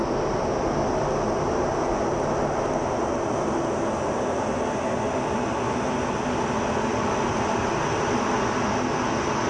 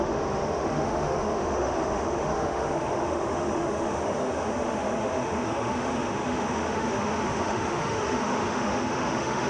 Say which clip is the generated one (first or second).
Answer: second